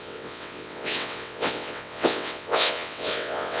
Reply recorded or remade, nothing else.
remade